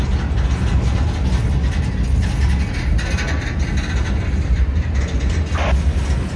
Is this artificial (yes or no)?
no